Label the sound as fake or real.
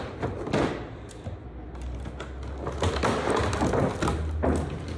real